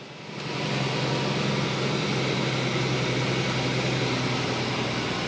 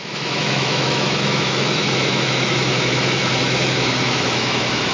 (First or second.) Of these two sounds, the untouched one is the first